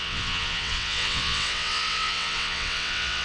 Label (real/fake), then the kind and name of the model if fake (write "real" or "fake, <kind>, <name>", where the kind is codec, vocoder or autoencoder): fake, vocoder, WaveNeXt